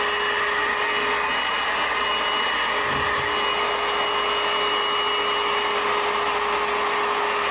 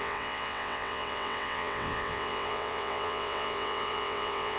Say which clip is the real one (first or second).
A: first